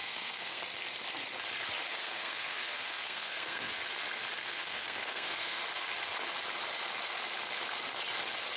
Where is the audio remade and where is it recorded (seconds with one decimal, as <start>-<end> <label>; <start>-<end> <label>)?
0.0-0.6 remade; 0.6-2.0 recorded; 2.0-3.7 remade; 3.7-4.4 recorded; 4.4-5.6 remade; 5.6-8.6 recorded